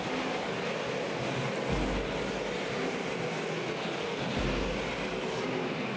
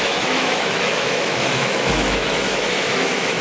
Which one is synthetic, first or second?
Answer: second